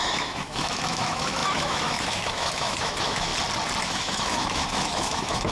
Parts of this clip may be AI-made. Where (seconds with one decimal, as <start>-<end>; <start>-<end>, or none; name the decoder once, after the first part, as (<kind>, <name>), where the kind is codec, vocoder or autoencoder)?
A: 0.0-3.3 (autoencoder, DAC-VAE); 3.8-5.5